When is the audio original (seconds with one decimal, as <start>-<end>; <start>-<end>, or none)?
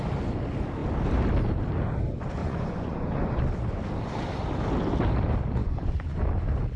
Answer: 0.0-2.4; 3.4-5.6; 6.2-6.8